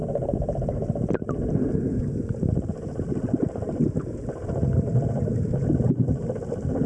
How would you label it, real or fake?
real